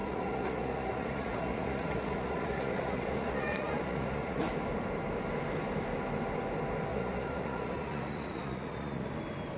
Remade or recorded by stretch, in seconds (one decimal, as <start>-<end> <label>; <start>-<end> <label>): 0.0-4.5 remade; 4.5-6.9 recorded; 6.9-9.1 remade; 9.1-9.6 recorded